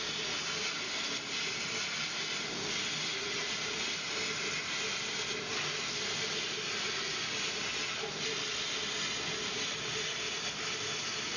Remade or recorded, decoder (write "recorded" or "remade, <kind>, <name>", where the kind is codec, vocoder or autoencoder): recorded